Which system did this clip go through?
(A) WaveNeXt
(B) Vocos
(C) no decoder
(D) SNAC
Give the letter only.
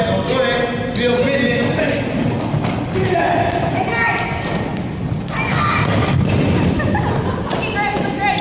C